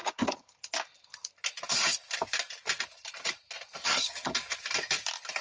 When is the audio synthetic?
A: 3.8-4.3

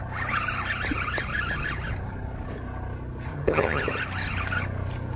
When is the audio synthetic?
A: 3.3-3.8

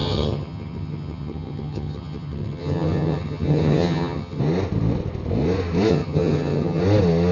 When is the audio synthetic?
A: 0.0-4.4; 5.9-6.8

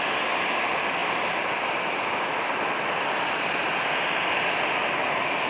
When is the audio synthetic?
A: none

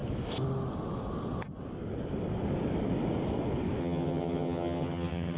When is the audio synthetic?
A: 3.8-5.4

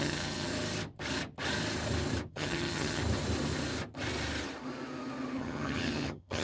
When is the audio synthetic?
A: 0.0-0.5; 2.3-3.0; 5.4-6.4

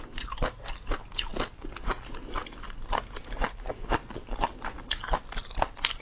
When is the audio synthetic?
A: none